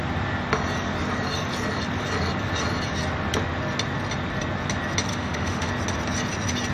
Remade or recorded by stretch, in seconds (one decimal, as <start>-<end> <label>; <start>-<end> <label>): 0.0-5.1 recorded; 5.1-5.7 remade; 5.7-6.7 recorded